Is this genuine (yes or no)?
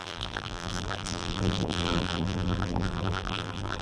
no